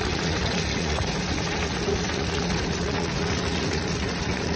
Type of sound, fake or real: fake